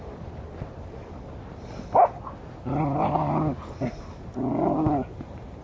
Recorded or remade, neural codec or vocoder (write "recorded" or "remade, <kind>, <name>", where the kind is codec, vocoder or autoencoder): recorded